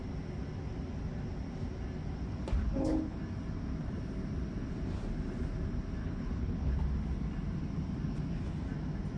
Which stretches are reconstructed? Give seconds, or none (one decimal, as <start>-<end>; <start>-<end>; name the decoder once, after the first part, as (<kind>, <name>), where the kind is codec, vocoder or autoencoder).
2.6-3.2 (codec, HILCodec); 6.0-6.8